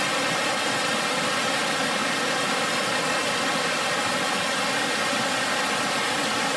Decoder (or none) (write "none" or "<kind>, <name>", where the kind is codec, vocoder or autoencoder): none